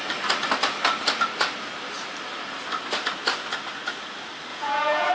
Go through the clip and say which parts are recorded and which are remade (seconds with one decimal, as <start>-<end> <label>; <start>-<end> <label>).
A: 0.0-4.5 recorded; 4.5-5.1 remade